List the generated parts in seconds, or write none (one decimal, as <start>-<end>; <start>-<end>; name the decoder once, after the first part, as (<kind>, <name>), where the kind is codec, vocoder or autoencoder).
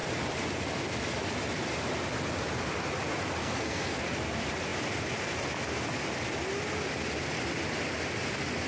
3.4-4.0 (codec, SNAC)